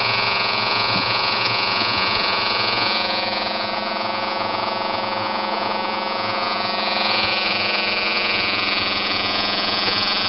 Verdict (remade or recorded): remade